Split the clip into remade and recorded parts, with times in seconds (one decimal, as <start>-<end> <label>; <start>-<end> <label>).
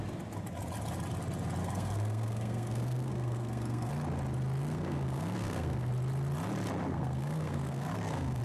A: 0.0-1.6 recorded; 1.6-3.9 remade; 3.9-4.6 recorded; 4.6-5.9 remade; 5.9-6.9 recorded; 6.9-8.4 remade